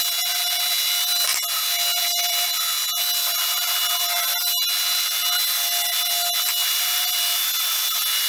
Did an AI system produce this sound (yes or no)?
no